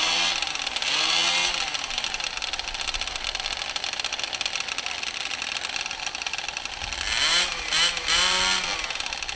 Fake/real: real